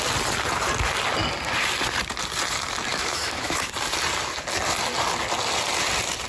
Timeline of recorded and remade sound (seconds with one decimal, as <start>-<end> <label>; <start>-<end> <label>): 0.0-2.9 recorded; 2.9-3.7 remade; 3.7-6.3 recorded